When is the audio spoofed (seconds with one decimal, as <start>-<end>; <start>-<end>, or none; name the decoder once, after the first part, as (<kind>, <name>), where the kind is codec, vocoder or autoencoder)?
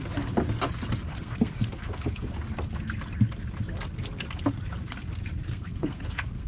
1.1-2.3 (codec, SNAC); 5.5-6.5